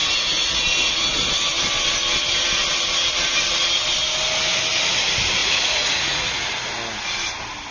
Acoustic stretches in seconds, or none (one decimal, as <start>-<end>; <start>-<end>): 1.3-5.4; 6.3-7.7